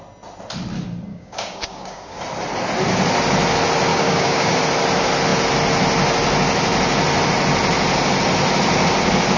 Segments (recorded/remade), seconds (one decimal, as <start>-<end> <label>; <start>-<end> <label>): 0.0-1.1 recorded; 1.1-2.2 remade; 2.2-3.9 recorded; 3.9-4.6 remade; 4.6-9.4 recorded